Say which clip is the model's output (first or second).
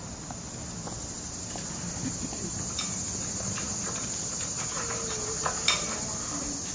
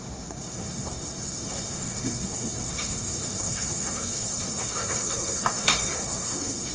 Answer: second